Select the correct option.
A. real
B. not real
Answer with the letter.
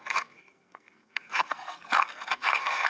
B